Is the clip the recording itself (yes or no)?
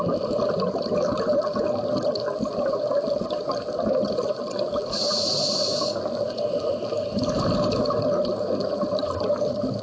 yes